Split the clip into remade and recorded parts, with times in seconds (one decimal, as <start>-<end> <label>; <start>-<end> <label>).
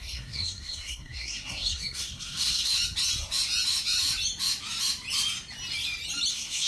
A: 0.0-2.7 remade; 2.7-6.3 recorded; 6.3-6.7 remade